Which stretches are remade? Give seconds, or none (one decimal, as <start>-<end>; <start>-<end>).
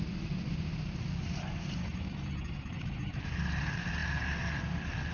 1.8-3.2